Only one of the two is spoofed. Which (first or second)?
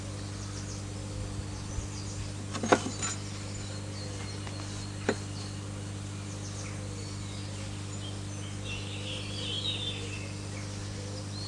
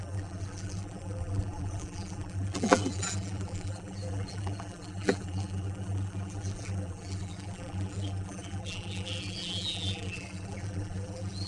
second